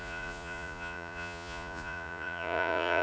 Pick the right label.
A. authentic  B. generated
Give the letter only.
B